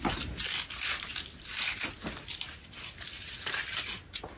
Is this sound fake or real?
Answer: real